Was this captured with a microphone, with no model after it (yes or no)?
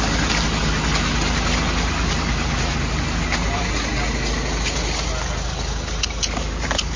yes